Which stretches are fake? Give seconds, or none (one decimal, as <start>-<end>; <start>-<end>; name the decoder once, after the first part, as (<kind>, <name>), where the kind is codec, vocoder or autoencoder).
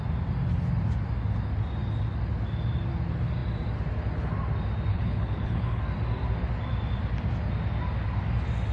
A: 4.9-5.8 (codec, HILCodec)